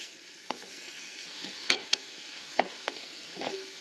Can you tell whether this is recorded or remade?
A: remade